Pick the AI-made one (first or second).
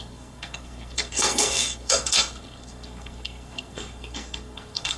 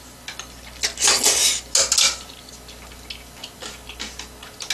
first